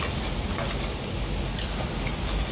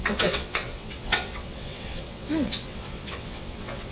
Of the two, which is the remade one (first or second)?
second